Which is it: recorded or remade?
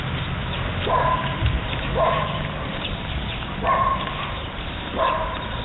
remade